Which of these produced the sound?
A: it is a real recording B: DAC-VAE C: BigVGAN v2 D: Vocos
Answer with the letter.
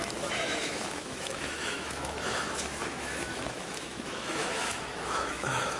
B